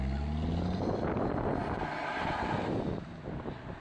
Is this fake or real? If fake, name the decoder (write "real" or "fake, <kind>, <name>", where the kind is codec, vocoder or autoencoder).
real